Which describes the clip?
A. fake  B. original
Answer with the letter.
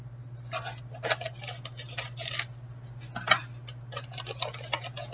B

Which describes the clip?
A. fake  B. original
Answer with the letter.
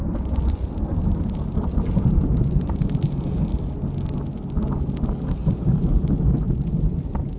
B